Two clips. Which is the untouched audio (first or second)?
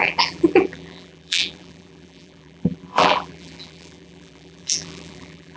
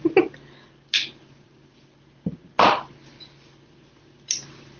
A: second